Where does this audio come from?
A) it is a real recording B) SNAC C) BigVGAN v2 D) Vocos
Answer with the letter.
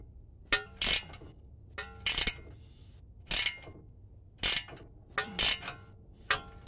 A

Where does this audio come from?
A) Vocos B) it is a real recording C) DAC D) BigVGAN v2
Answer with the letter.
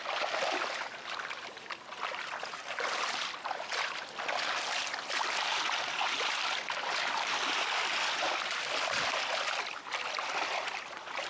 D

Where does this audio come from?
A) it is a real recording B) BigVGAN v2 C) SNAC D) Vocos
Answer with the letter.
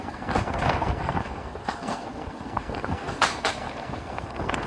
C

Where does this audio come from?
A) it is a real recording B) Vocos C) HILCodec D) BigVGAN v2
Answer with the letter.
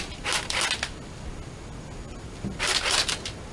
A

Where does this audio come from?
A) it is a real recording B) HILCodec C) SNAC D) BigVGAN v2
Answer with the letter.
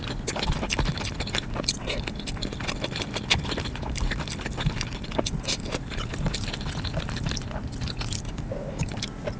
A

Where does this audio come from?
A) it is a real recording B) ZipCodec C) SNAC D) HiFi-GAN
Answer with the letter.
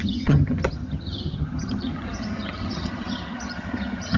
D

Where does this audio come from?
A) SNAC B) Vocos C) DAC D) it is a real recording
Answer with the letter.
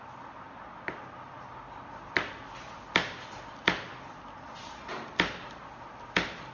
D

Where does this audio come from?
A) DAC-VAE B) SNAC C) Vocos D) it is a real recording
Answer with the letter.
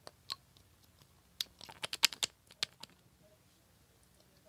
D